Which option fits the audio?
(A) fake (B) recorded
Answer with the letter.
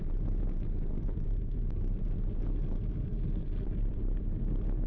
B